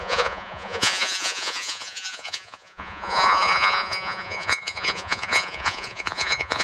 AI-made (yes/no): yes